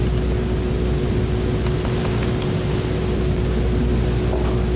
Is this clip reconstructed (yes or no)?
no